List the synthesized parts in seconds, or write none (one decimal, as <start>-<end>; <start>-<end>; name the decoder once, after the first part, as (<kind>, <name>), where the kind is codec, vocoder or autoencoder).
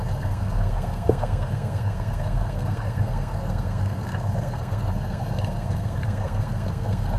0.0-7.2 (codec, SNAC)